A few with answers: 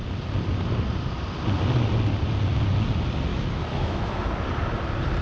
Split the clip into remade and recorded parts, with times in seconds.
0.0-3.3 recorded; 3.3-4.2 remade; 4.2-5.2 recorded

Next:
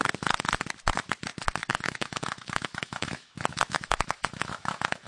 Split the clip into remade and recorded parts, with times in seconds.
0.0-1.6 recorded; 1.6-5.1 remade